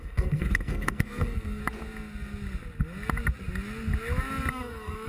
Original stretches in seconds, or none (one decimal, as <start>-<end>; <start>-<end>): 1.6-4.5